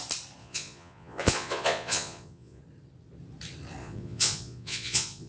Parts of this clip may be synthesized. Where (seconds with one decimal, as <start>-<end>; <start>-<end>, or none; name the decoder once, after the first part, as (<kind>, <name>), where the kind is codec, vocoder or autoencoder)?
0.4-2.6 (vocoder, Vocos); 3.8-5.3